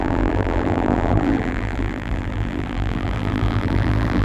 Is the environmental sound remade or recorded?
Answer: remade